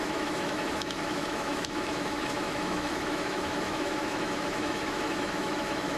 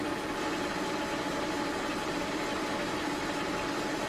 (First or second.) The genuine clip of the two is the second